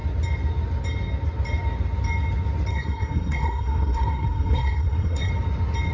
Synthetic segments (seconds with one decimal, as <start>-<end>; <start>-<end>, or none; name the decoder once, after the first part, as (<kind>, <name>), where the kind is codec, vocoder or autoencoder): 2.7-5.3 (codec, SNAC)